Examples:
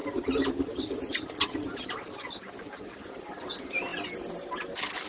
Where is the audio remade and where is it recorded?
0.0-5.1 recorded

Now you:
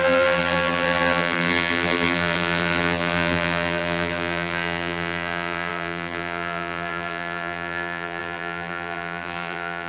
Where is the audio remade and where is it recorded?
0.0-9.9 remade

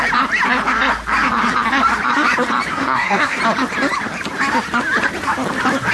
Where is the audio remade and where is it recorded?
0.0-2.7 recorded; 2.7-3.4 remade; 3.4-5.9 recorded